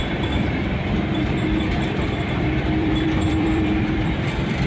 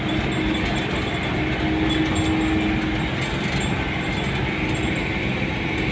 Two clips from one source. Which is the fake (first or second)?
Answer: first